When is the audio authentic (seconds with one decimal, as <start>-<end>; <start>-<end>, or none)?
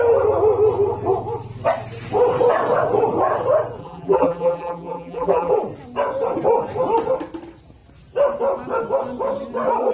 0.0-3.8; 5.5-9.9